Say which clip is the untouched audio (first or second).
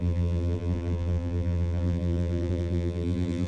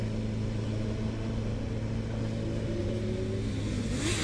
second